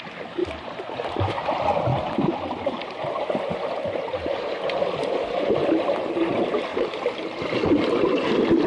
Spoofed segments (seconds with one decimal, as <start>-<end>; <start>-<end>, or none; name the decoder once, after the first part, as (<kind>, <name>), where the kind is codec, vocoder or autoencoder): 0.4-1.1 (vocoder, BigVGAN v2); 1.9-4.8; 6.7-7.2